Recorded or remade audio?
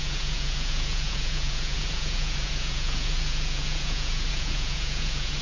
remade